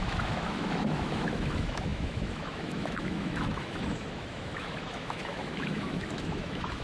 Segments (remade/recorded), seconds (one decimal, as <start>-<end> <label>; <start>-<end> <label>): 0.0-6.8 remade